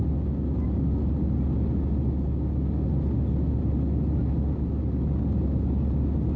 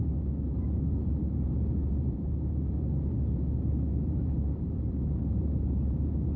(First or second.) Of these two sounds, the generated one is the second